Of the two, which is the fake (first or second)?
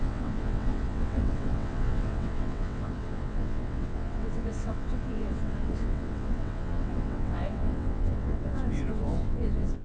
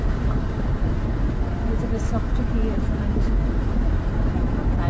first